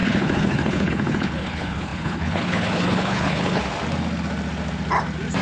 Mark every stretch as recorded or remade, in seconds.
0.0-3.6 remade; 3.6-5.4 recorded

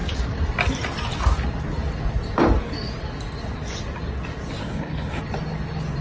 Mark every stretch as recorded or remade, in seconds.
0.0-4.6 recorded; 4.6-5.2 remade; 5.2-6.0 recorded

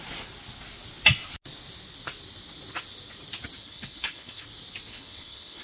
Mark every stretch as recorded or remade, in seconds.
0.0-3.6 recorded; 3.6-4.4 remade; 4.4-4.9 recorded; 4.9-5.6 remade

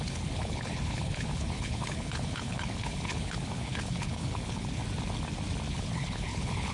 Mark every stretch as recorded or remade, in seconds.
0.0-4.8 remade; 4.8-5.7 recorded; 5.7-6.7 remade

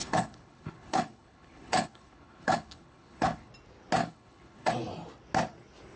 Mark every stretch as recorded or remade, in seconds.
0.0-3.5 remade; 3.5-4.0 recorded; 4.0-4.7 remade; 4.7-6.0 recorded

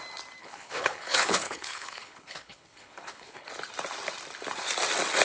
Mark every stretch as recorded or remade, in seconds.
0.0-0.4 recorded; 0.4-3.5 remade; 3.5-5.2 recorded

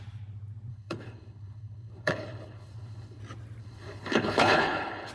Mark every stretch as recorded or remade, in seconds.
0.0-0.7 recorded; 0.7-3.2 remade; 3.2-3.6 recorded; 3.6-5.1 remade

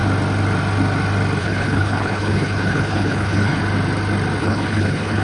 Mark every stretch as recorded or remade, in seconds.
0.0-1.4 recorded; 1.4-3.6 remade; 3.6-4.4 recorded; 4.4-5.2 remade